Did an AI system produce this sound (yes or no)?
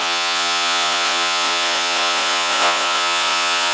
yes